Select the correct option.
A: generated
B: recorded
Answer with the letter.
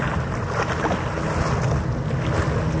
B